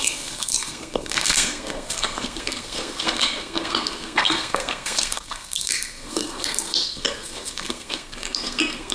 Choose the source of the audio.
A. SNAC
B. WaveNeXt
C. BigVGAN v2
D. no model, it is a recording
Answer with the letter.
A